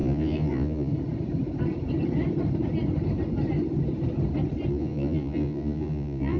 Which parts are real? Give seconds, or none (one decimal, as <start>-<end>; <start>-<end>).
0.9-4.7